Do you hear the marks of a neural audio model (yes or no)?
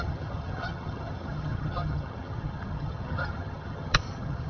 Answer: yes